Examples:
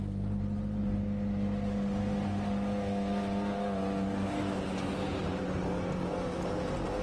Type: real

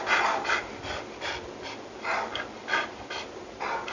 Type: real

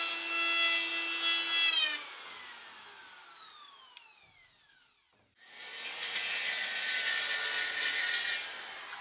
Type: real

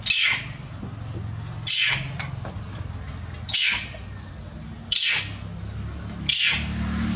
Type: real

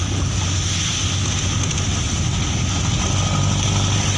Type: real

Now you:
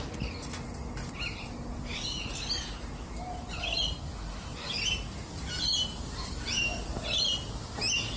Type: real